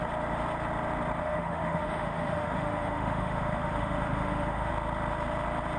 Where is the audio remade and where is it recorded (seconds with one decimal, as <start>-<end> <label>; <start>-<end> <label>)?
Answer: 0.0-1.2 recorded; 1.2-4.7 remade; 4.7-5.8 recorded